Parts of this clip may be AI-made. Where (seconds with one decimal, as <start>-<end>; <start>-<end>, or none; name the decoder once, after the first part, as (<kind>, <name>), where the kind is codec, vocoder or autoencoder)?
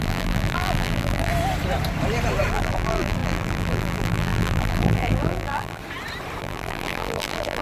0.0-1.3 (vocoder, BigVGAN v2); 2.5-5.8; 6.4-7.6